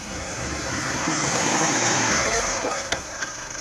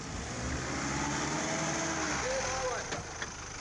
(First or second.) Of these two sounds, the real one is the second